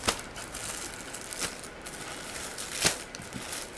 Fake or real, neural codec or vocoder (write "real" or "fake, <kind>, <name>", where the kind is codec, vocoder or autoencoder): real